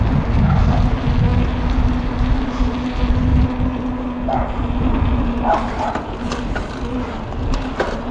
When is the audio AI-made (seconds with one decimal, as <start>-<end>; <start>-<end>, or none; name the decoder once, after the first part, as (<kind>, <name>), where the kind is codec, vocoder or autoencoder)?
none